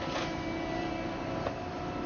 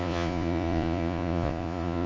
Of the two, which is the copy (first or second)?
second